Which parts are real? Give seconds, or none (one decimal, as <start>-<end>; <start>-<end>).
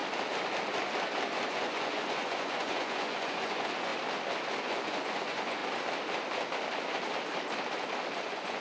0.0-1.5; 3.9-4.6; 5.6-8.2